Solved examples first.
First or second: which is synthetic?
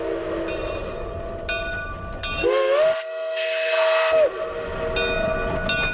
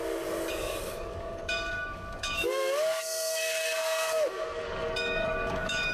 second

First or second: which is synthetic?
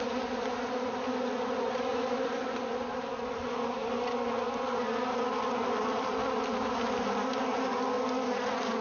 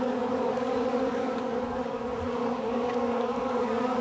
second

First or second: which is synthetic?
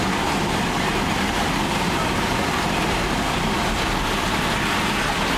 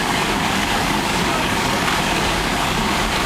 second